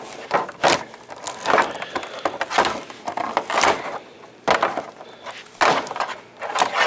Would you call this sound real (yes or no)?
yes